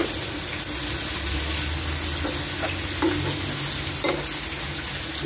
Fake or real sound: real